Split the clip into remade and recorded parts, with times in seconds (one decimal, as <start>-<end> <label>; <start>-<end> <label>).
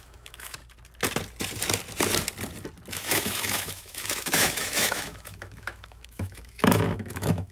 0.0-0.6 remade; 0.6-2.9 recorded; 2.9-7.5 remade